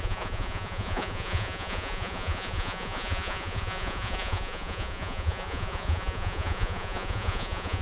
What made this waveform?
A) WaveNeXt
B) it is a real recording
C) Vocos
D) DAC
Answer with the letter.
C